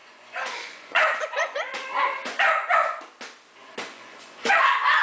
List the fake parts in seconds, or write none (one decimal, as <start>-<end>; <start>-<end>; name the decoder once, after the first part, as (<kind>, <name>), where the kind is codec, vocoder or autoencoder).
0.0-3.0 (vocoder, Vocos); 3.6-4.5